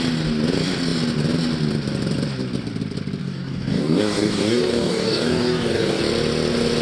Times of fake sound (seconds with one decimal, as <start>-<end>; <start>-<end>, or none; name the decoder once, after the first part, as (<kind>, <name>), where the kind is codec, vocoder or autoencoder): 3.2-6.0 (codec, DAC)